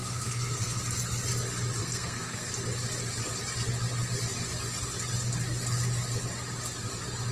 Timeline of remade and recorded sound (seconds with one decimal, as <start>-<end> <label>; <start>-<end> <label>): 0.0-0.8 remade; 0.8-1.8 recorded; 1.8-2.5 remade; 2.5-7.3 recorded